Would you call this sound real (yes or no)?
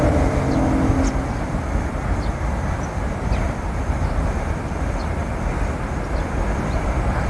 yes